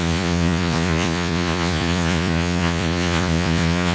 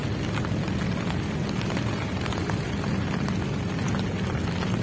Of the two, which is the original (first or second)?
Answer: second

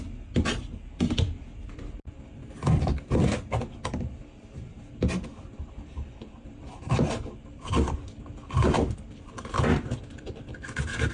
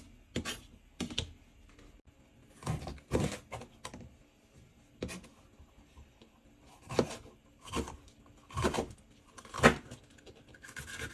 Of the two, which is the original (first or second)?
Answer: second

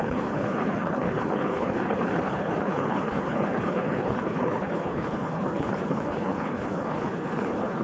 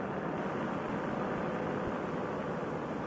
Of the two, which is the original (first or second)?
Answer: second